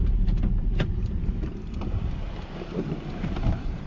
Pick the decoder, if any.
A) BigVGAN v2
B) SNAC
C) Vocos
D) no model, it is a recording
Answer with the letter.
A